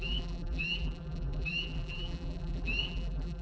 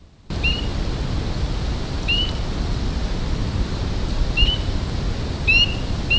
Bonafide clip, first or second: second